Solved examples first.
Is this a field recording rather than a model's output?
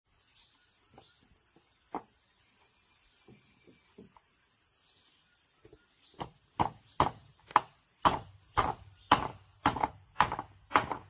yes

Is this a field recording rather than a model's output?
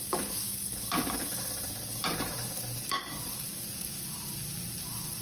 no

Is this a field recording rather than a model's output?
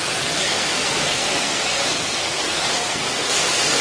no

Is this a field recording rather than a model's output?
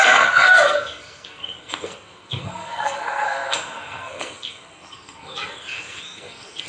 no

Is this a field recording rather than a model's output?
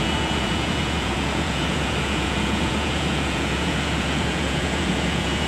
no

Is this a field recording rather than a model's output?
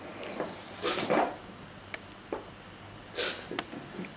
yes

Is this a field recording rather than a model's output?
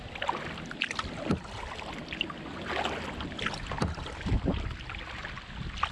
yes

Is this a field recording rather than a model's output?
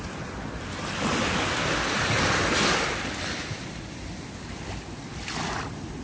yes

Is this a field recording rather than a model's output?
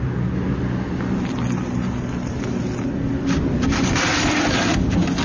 yes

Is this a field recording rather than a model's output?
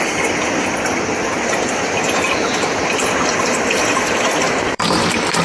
no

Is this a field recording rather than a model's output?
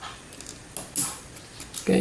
yes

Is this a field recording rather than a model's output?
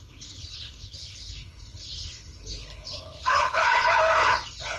no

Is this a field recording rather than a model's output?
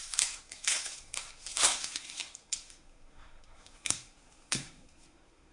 no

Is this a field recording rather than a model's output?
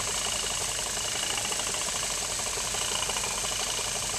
yes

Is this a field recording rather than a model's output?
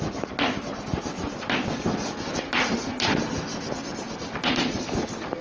yes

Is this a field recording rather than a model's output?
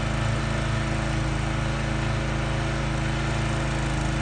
yes